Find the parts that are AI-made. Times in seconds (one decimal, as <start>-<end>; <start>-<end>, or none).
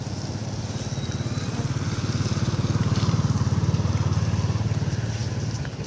none